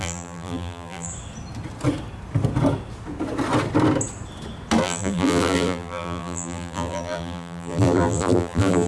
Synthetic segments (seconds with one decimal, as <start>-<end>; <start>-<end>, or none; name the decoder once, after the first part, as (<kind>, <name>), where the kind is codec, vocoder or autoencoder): 0.0-1.1 (vocoder, BigVGAN v2); 4.8-8.9